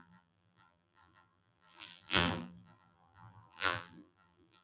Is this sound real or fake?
fake